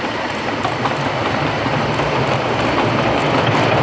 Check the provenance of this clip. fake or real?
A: real